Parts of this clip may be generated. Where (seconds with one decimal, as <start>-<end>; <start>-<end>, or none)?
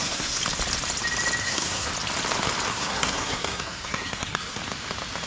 0.0-0.4; 1.4-1.9; 2.7-4.6